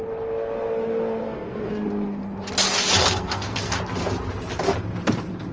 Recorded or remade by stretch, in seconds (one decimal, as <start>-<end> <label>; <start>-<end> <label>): 0.0-1.2 recorded; 1.2-1.7 remade; 1.7-3.0 recorded; 3.0-3.8 remade; 3.8-5.5 recorded